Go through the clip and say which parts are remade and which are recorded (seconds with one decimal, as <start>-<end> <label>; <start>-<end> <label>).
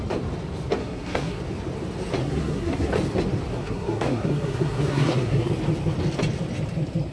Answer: 0.0-0.8 recorded; 0.8-1.4 remade; 1.4-2.2 recorded; 2.2-2.9 remade; 2.9-3.5 recorded; 3.5-5.5 remade; 5.5-7.1 recorded